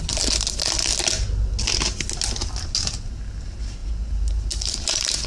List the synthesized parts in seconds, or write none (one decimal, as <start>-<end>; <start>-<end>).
none